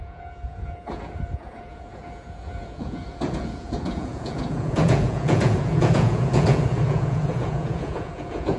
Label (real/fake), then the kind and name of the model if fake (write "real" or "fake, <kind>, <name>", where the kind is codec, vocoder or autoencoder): fake, vocoder, Vocos